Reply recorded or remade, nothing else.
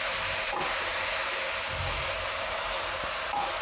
remade